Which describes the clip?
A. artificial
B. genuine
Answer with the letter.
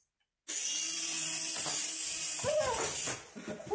B